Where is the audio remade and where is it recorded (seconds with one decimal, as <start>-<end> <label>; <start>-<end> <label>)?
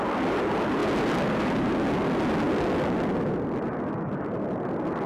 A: 0.0-5.1 recorded